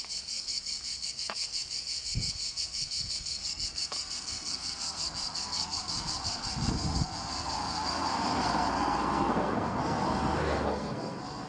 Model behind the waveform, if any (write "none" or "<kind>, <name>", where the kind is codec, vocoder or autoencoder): codec, SNAC